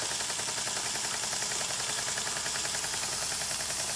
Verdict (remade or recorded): recorded